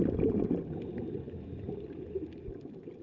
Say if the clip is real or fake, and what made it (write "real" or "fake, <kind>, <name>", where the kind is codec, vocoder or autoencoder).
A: fake, vocoder, BigVGAN v2